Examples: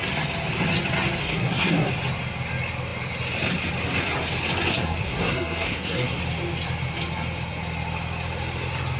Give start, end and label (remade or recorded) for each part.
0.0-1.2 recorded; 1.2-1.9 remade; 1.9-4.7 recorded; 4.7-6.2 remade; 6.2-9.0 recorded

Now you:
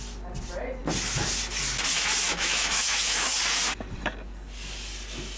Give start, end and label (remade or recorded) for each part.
0.0-2.3 recorded; 2.3-3.4 remade; 3.4-5.4 recorded

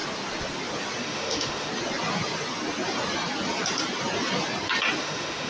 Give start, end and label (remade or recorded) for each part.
0.0-1.0 recorded; 1.0-1.7 remade; 1.7-5.0 recorded; 5.0-5.5 remade